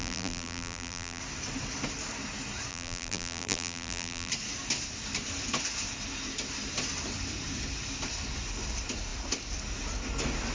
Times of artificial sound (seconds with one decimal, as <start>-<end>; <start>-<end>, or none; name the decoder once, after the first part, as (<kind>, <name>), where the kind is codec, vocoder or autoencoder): 0.0-1.2 (vocoder, BigVGAN v2); 2.7-4.3